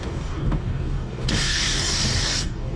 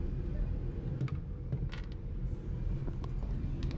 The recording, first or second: second